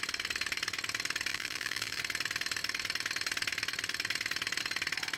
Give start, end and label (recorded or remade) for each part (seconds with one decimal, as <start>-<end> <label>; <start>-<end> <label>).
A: 0.0-1.3 recorded; 1.3-2.0 remade; 2.0-5.2 recorded